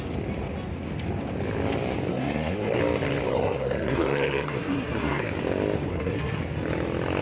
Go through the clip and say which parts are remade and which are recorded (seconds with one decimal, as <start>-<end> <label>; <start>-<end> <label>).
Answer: 0.0-2.1 recorded; 2.1-2.8 remade; 2.8-3.3 recorded; 3.3-5.3 remade; 5.3-5.9 recorded; 5.9-6.4 remade; 6.4-7.2 recorded